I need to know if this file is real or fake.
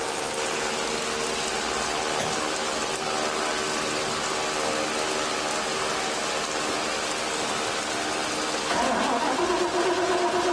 real